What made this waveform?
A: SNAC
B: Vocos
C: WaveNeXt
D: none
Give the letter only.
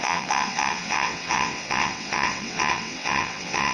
C